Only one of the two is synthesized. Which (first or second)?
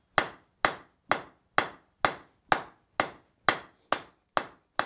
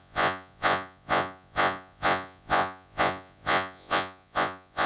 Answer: second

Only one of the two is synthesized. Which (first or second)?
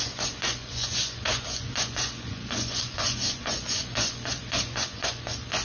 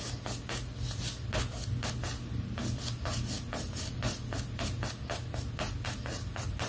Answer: first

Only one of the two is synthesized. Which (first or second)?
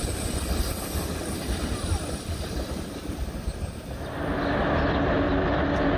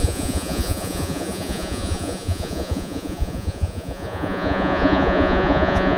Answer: second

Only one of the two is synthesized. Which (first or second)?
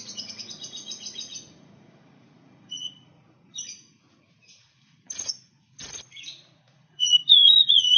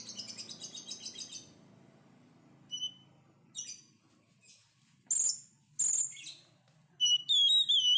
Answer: first